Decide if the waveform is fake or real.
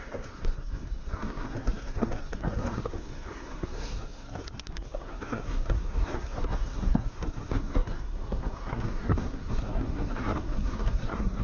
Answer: fake